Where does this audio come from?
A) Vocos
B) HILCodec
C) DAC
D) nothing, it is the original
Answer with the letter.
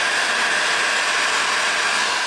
D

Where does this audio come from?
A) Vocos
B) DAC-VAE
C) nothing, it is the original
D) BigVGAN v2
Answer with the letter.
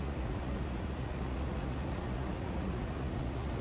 A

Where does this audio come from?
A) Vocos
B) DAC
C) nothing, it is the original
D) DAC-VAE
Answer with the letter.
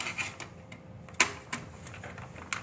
C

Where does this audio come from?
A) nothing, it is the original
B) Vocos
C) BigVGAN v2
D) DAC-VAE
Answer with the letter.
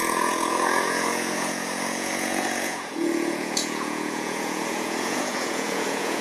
B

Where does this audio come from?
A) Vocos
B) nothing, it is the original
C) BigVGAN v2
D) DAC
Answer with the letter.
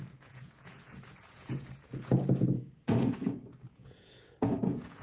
A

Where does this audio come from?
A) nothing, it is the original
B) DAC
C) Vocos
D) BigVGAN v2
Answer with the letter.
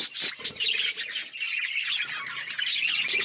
A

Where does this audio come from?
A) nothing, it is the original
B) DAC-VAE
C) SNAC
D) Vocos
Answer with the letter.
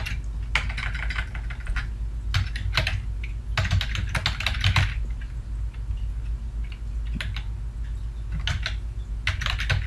A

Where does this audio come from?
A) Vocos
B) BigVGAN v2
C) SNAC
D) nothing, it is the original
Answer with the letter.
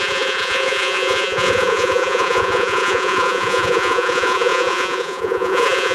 A